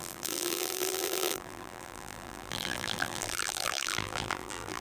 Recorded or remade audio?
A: remade